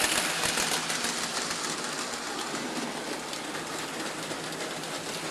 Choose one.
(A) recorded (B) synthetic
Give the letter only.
A